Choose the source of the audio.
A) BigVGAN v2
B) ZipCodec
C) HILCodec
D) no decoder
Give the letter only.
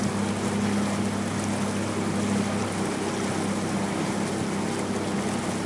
D